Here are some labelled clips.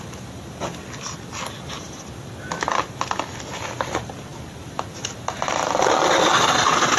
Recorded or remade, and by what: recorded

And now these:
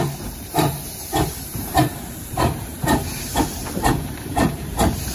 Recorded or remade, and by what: remade, vocoder, BigVGAN v2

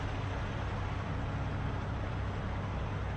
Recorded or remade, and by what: recorded